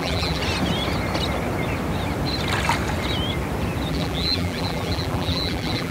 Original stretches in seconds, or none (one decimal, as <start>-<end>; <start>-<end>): 0.4-3.9